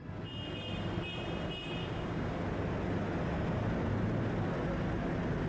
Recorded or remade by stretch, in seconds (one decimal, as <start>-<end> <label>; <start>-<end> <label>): 0.0-1.8 recorded; 1.8-2.3 remade; 2.3-5.5 recorded